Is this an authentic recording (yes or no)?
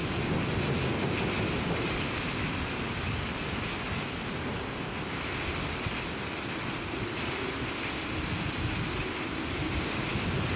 yes